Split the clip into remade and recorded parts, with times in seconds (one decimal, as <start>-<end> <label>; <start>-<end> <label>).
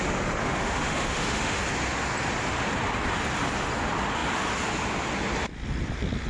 0.0-0.4 recorded; 0.4-1.6 remade; 1.6-6.3 recorded